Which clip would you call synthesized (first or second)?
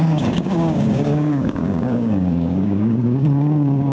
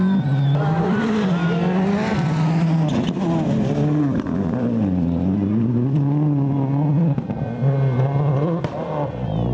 first